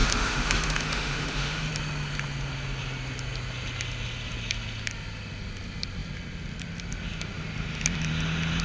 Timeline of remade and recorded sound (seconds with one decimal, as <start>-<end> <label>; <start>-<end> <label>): 0.0-1.7 remade; 1.7-8.6 recorded